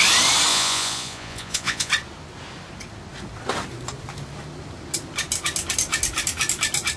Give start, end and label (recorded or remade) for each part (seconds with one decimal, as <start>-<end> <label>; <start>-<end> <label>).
0.0-0.5 recorded; 0.5-1.9 remade; 1.9-7.0 recorded